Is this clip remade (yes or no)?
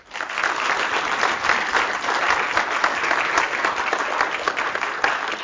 no